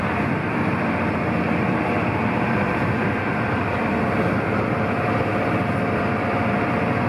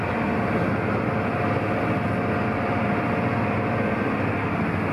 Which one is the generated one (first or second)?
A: first